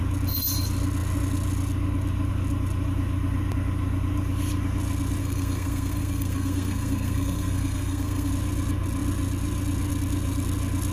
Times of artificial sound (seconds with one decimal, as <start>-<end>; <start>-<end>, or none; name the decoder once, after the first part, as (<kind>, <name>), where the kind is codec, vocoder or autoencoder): 5.2-8.3 (codec, SNAC)